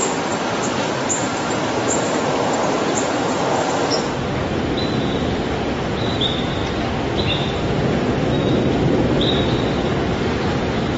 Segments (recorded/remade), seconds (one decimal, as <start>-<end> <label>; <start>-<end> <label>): 0.0-0.6 recorded; 0.6-6.6 remade; 6.6-7.3 recorded; 7.3-11.0 remade